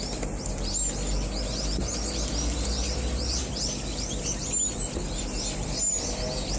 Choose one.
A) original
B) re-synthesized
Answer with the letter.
A